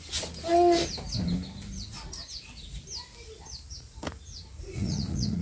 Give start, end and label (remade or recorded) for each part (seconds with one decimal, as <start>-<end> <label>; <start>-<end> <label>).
0.0-3.7 recorded; 3.7-5.4 remade

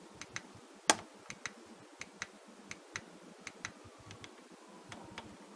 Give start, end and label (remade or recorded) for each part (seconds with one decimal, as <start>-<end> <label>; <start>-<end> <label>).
0.0-5.6 recorded